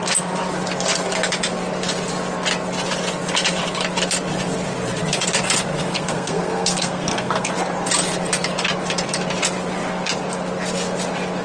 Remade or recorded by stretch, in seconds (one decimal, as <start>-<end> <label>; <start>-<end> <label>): 0.0-5.7 recorded; 5.7-7.5 remade; 7.5-11.4 recorded